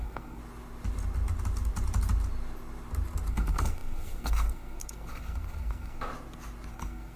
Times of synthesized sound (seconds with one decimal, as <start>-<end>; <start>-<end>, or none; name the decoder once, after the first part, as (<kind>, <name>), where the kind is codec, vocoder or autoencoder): 0.0-0.4 (codec, SNAC); 3.3-6.1; 6.7-7.2